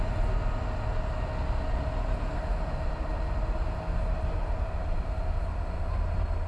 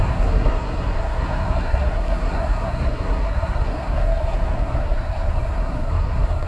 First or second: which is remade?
second